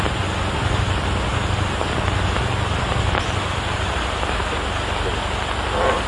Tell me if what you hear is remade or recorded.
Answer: recorded